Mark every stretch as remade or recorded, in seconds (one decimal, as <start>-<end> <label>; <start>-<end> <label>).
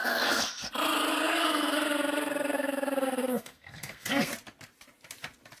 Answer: 0.0-0.7 remade; 0.7-1.1 recorded; 1.1-4.3 remade; 4.3-5.6 recorded